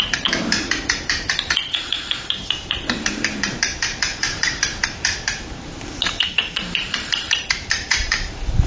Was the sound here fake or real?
fake